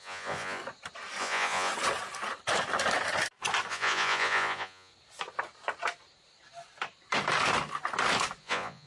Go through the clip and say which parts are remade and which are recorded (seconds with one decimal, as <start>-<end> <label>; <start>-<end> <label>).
0.0-0.6 remade; 0.6-1.2 recorded; 1.2-1.7 remade; 1.7-3.7 recorded; 3.7-4.9 remade; 4.9-8.4 recorded; 8.4-8.9 remade